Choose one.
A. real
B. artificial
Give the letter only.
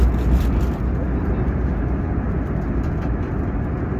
A